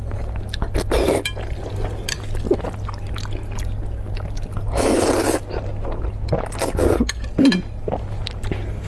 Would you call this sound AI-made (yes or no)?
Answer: no